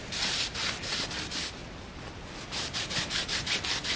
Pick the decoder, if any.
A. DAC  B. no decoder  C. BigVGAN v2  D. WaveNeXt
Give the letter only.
B